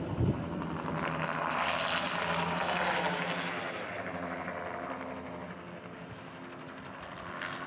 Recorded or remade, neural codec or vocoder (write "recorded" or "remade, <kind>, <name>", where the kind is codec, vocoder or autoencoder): recorded